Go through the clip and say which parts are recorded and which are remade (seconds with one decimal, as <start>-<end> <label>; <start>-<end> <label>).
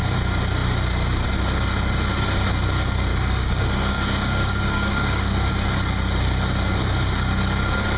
0.0-3.1 recorded; 3.1-5.5 remade; 5.5-8.0 recorded